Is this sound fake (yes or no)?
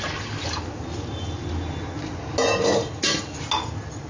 no